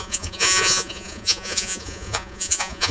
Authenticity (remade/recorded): remade